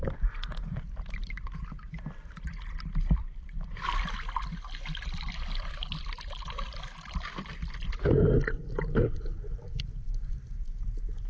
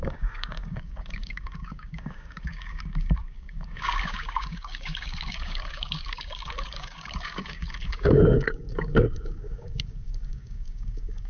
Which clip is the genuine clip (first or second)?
first